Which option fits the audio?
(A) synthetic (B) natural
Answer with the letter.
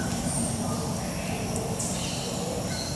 B